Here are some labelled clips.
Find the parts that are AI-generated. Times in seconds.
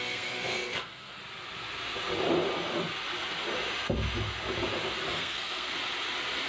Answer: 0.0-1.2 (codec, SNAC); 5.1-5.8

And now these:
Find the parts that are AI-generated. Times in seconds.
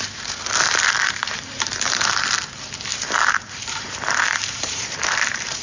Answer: 1.2-2.1 (vocoder, BigVGAN v2); 2.9-5.6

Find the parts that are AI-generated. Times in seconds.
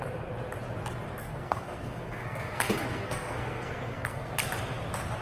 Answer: 1.2-4.3 (codec, SNAC)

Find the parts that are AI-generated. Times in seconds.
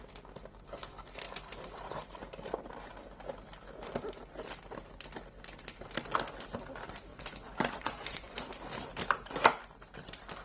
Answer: 7.1-8.5 (vocoder, Vocos)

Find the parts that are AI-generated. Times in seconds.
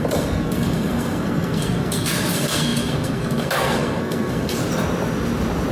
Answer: 0.0-4.6 (codec, SNAC)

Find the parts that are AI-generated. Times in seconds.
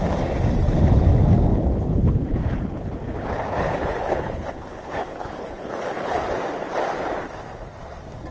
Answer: 1.5-6.2 (codec, HILCodec)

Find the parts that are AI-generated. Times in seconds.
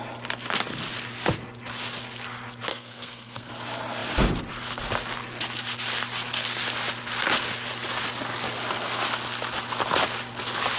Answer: 2.7-3.5 (codec, SNAC)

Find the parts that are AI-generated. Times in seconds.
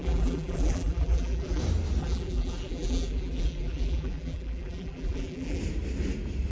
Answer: 0.0-1.6 (vocoder, BigVGAN v2); 2.0-5.6